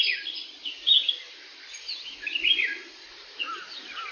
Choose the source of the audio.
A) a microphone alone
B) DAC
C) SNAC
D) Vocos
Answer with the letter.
A